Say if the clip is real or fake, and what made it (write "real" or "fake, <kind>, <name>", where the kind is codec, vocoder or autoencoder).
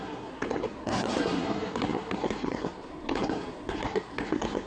fake, codec, SNAC